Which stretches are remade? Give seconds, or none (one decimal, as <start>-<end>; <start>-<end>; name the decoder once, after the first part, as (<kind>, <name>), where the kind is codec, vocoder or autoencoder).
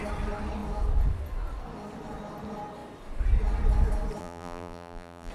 4.2-5.3 (vocoder, BigVGAN v2)